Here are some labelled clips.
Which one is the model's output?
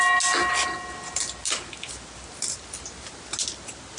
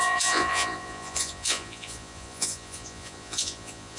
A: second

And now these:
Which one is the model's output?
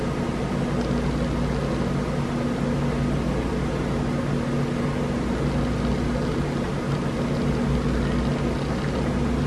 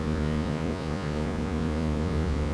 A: second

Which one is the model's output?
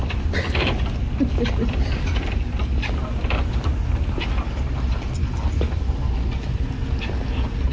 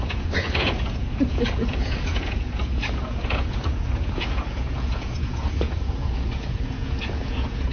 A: second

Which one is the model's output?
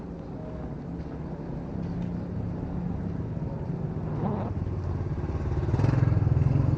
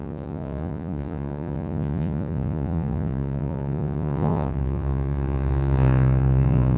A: second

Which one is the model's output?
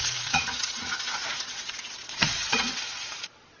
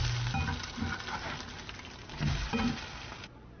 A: first